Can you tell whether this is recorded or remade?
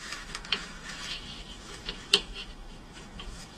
remade